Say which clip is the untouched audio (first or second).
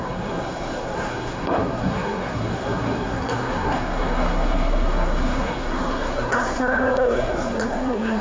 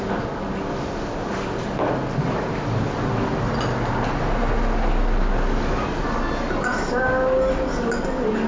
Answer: second